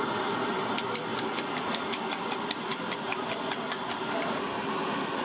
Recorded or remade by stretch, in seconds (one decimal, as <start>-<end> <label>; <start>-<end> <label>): 0.0-1.1 remade; 1.1-1.6 recorded; 1.6-5.2 remade